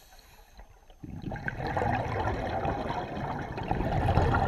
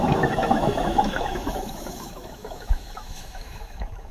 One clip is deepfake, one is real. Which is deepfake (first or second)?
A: second